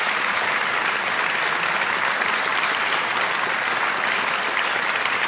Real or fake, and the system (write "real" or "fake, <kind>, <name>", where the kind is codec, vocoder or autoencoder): real